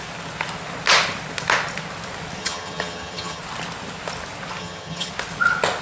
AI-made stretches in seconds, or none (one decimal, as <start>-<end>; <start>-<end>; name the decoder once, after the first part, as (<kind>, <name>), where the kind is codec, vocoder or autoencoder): 2.4-3.4 (vocoder, HiFi-GAN); 4.6-5.1